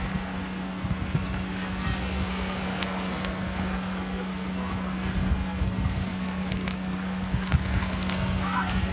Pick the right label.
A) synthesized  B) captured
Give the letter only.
A